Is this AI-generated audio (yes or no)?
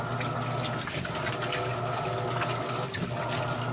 no